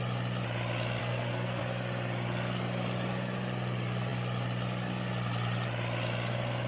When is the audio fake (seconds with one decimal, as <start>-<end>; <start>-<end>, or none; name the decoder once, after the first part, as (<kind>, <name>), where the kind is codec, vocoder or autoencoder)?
1.0-1.6 (codec, SNAC)

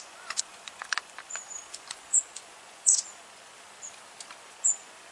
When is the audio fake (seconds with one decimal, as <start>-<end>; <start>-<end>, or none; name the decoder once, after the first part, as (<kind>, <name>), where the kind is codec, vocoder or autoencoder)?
0.0-3.5 (vocoder, Vocos); 4.4-5.1

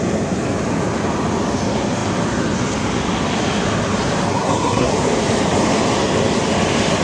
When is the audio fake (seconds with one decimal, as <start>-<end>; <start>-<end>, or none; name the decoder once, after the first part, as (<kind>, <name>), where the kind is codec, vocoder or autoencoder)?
4.3-4.9 (codec, SNAC)